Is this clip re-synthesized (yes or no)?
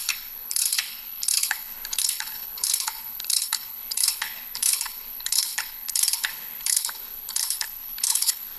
yes